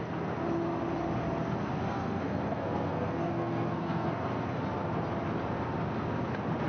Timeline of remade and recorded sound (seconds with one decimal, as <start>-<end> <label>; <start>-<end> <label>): 0.0-1.7 recorded; 1.7-4.6 remade; 4.6-6.7 recorded